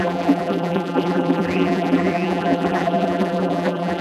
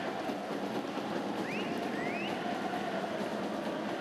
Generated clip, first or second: first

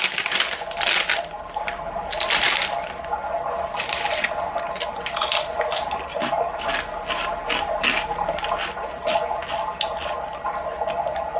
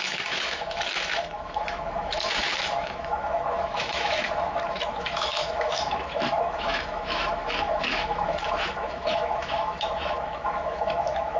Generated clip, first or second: second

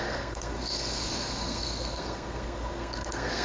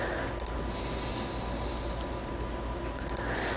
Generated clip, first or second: first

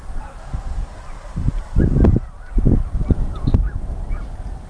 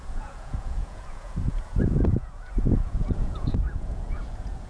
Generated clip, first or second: second